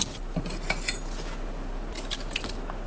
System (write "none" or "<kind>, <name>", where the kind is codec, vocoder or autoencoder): none